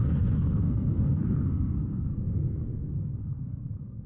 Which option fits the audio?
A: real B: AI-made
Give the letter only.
B